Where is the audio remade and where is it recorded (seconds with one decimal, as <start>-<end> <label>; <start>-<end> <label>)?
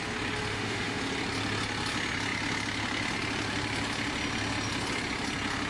0.0-0.5 recorded; 0.5-1.0 remade; 1.0-5.7 recorded